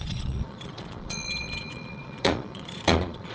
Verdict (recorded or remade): remade